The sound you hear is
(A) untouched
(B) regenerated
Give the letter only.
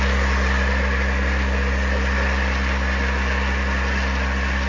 A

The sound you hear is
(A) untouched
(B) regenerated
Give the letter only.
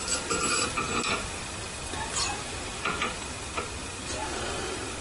A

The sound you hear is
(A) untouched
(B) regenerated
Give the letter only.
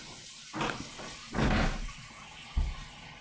A